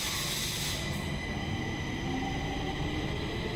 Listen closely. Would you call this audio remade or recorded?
recorded